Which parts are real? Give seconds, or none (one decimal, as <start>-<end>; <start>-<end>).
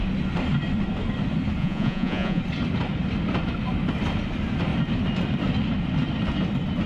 0.0-1.6; 2.4-6.9